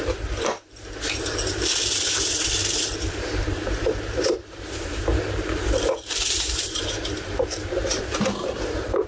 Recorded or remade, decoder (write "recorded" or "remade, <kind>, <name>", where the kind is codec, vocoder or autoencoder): remade, vocoder, BigVGAN v2